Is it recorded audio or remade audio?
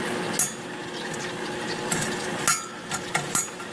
recorded